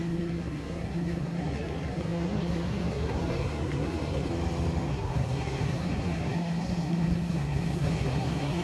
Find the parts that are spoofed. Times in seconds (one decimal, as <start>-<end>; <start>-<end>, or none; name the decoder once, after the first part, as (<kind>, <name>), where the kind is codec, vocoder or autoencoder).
0.0-4.3 (codec, SNAC); 4.9-8.6